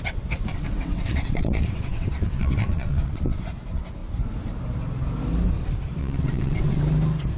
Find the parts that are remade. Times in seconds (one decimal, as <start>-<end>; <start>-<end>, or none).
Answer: 0.5-3.4; 6.0-6.8